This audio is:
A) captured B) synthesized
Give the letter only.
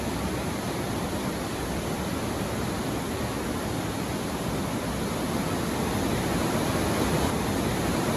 A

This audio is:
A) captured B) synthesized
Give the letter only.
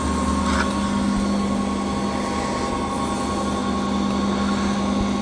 A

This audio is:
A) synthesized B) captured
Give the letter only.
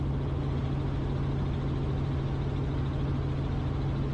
B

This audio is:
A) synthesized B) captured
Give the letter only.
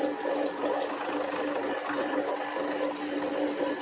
B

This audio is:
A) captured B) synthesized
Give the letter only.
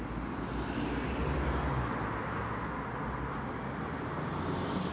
A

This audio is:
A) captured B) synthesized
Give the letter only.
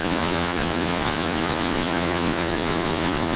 B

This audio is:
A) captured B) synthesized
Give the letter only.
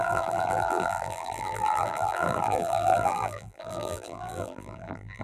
B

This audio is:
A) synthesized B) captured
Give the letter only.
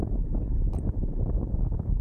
B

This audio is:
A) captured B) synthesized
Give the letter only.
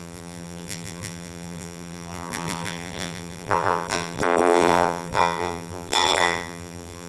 B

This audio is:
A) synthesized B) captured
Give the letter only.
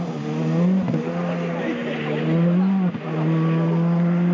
B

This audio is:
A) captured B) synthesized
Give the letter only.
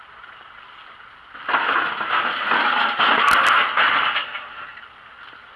A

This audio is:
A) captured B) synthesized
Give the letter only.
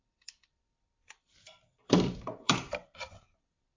B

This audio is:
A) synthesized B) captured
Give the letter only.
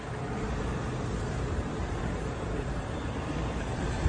A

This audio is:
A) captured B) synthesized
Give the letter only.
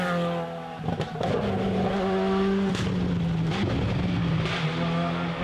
A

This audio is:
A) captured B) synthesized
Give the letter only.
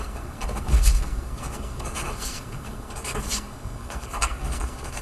B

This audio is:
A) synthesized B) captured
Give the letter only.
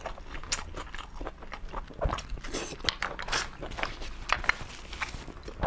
B